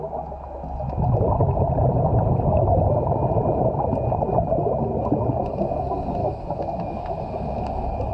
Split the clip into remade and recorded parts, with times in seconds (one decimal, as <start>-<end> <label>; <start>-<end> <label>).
0.0-6.2 recorded; 6.2-7.2 remade; 7.2-8.1 recorded